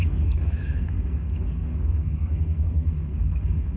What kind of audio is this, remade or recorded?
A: remade